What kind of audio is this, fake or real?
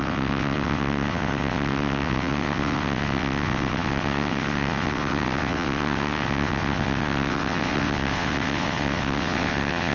fake